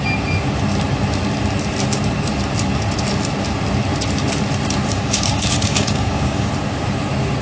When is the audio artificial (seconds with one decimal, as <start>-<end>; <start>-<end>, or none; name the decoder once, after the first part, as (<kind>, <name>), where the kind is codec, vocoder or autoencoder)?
4.9-6.5 (codec, DAC)